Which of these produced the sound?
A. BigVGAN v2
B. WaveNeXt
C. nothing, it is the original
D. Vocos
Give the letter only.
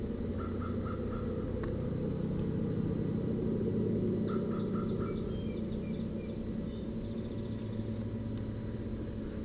C